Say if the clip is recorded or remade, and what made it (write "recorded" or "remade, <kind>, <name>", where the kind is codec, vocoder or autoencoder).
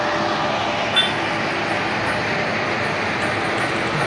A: recorded